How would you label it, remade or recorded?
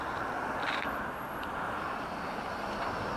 recorded